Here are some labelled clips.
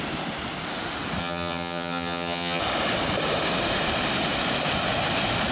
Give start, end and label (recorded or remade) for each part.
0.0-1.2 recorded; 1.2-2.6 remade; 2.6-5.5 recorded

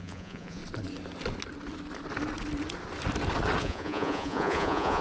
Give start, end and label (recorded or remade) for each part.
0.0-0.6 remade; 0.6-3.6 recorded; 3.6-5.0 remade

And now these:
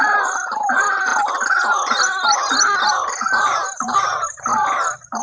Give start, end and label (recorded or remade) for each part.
0.0-1.1 remade; 1.1-2.9 recorded; 2.9-4.5 remade; 4.5-5.2 recorded

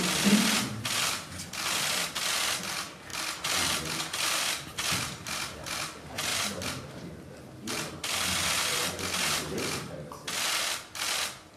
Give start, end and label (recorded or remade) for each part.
0.0-11.6 recorded

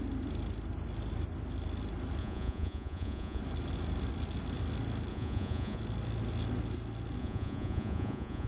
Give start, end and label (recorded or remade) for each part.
0.0-2.2 recorded; 2.2-3.4 remade; 3.4-5.1 recorded; 5.1-5.8 remade; 5.8-7.2 recorded; 7.2-8.5 remade

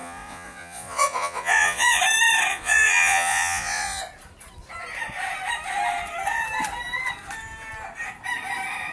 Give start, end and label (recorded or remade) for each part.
0.0-2.0 remade; 2.0-2.5 recorded; 2.5-4.0 remade; 4.0-8.9 recorded

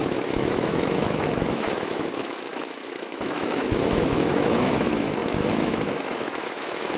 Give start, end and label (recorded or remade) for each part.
0.0-7.0 remade

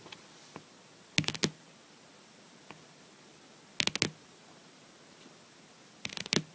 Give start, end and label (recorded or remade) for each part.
0.0-6.5 recorded